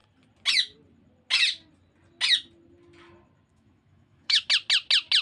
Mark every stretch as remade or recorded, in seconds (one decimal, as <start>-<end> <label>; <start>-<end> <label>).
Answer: 0.0-3.5 recorded; 3.5-4.5 remade; 4.5-5.2 recorded